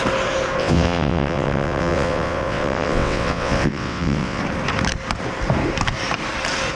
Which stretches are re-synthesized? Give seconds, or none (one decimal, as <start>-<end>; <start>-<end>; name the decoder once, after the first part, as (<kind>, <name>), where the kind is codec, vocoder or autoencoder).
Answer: 0.6-4.4 (vocoder, WaveNeXt)